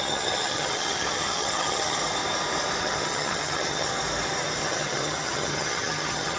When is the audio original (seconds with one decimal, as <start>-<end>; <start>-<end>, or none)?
2.0-2.8; 3.9-4.6